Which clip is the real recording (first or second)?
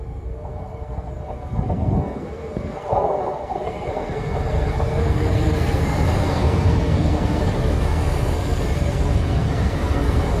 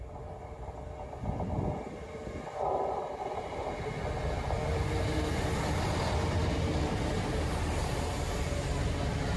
second